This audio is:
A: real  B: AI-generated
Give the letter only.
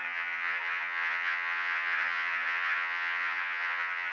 B